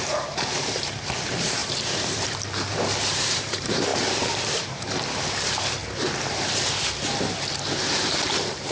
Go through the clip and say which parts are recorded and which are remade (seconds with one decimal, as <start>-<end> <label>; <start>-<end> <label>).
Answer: 0.0-5.8 remade; 5.8-7.9 recorded; 7.9-8.7 remade